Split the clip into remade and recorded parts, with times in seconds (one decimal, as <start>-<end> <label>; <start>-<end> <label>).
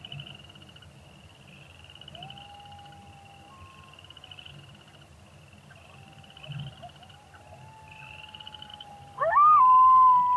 0.0-10.4 recorded